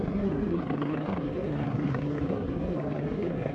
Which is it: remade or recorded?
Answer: remade